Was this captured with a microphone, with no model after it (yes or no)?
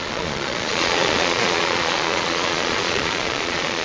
no